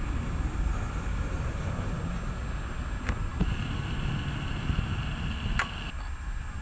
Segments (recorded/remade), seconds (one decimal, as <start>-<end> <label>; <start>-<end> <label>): 0.0-6.6 recorded